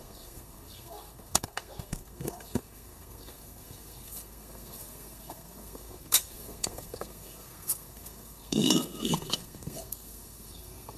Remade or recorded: remade